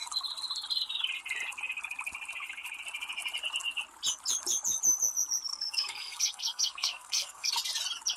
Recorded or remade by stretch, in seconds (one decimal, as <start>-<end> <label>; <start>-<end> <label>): 0.0-5.5 recorded; 5.5-7.5 remade; 7.5-8.2 recorded